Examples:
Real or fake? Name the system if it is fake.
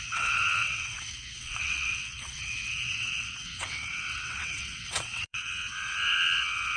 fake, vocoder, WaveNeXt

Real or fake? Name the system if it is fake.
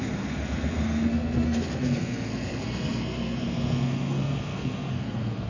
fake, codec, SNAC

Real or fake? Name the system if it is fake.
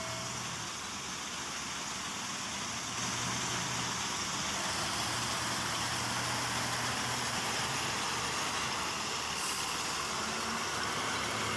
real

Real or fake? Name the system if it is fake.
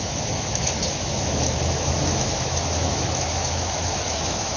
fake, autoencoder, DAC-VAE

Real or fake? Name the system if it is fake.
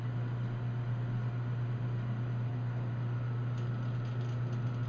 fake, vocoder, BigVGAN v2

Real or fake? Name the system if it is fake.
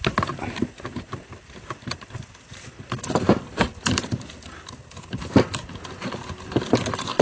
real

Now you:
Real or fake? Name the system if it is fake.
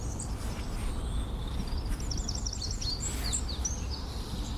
real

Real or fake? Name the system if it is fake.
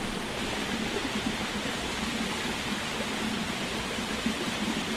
real